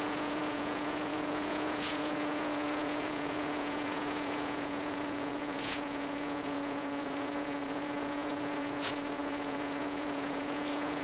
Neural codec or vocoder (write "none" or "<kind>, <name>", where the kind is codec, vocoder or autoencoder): vocoder, Vocos